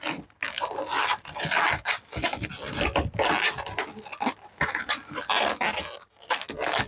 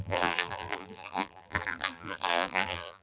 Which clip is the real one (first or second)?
first